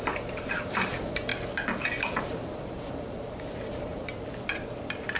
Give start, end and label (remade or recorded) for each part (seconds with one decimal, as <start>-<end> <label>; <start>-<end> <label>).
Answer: 0.0-1.3 remade; 1.3-2.2 recorded; 2.2-3.9 remade; 3.9-5.2 recorded